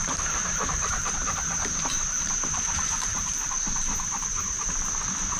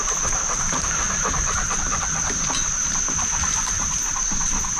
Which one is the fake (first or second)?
first